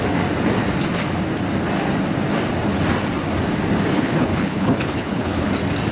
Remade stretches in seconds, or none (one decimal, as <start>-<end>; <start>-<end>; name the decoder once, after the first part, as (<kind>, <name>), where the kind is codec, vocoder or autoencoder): 3.9-5.5 (codec, HILCodec)